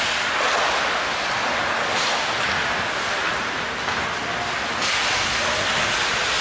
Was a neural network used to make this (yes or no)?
no